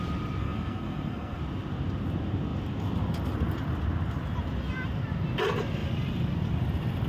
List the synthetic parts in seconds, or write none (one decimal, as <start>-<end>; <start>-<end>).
0.4-1.4